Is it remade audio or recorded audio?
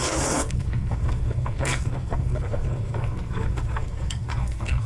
remade